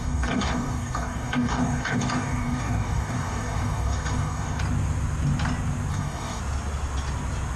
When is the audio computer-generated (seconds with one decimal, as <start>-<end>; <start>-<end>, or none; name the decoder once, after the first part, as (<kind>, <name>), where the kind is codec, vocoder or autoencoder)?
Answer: 0.0-4.6 (codec, DAC); 5.9-6.4